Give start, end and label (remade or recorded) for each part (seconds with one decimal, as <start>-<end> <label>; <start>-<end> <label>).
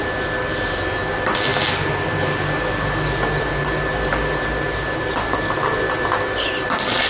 0.0-7.1 recorded